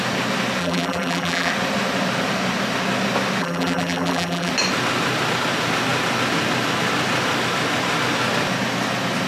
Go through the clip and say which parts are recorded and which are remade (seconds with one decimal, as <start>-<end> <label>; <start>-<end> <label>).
0.0-0.6 recorded; 0.6-1.5 remade; 1.5-3.4 recorded; 3.4-4.5 remade; 4.5-9.3 recorded